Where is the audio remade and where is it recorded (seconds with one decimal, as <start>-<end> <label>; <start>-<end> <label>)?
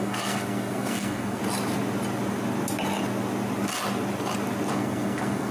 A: 0.0-1.4 remade; 1.4-4.7 recorded; 4.7-5.5 remade